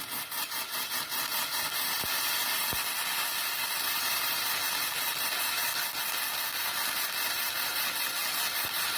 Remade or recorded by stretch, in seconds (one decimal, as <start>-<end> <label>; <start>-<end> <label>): 0.0-2.8 remade; 2.8-3.7 recorded; 3.7-5.7 remade; 5.7-6.6 recorded; 6.6-9.0 remade